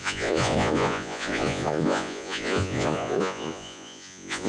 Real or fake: fake